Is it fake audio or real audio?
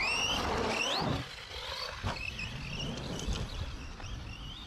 real